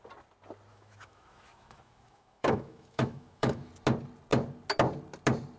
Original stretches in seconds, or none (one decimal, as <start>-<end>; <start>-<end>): 0.0-0.7; 3.7-5.6